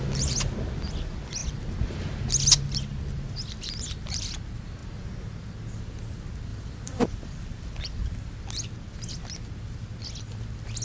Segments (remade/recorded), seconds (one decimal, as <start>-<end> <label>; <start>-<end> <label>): 0.0-6.5 recorded; 6.5-8.0 remade; 8.0-10.8 recorded